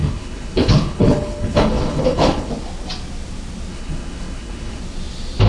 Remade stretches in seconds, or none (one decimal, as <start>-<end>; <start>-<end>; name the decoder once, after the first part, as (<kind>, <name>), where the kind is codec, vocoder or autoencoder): 0.0-2.5 (codec, HILCodec); 3.7-4.8